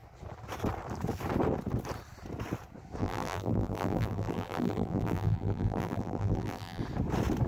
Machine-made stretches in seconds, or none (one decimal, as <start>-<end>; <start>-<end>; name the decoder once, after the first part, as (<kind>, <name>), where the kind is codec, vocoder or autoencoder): 3.0-6.8 (vocoder, BigVGAN v2)

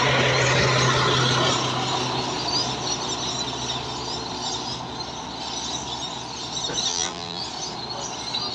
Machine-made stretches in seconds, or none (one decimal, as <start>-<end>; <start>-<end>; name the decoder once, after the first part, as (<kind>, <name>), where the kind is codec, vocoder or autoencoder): 6.9-7.4 (vocoder, BigVGAN v2)

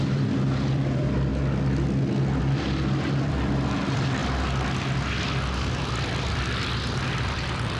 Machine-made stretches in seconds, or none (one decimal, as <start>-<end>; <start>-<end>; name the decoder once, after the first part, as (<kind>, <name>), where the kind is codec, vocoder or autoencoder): 0.0-1.3 (vocoder, BigVGAN v2); 2.4-4.2; 6.3-7.8

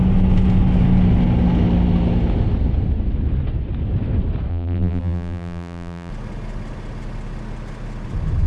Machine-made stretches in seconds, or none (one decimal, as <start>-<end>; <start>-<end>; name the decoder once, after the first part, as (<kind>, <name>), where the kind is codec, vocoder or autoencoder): 4.5-6.1 (vocoder, BigVGAN v2)

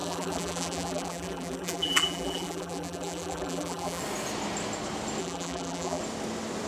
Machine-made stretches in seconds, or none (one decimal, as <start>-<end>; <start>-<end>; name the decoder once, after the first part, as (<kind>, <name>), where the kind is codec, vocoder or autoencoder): 0.0-4.0 (vocoder, BigVGAN v2); 5.2-6.0

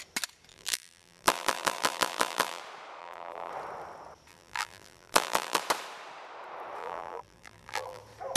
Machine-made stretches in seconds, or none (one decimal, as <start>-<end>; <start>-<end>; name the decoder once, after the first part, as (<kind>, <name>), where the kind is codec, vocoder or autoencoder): 0.5-2.6 (vocoder, BigVGAN v2); 3.0-3.5; 4.3-5.6; 6.8-8.0